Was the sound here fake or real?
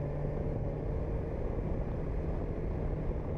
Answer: real